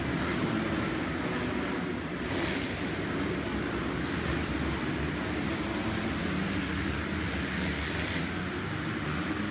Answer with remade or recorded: recorded